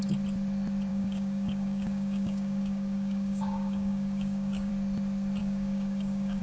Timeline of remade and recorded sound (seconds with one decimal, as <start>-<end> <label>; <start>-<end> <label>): 0.0-0.9 recorded; 0.9-4.7 remade; 4.7-5.4 recorded; 5.4-6.4 remade